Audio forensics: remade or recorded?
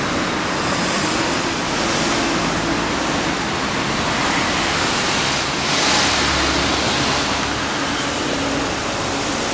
recorded